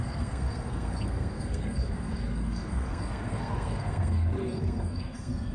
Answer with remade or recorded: remade